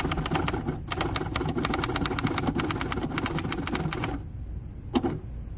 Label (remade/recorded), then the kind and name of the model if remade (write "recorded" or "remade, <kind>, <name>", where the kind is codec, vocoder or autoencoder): recorded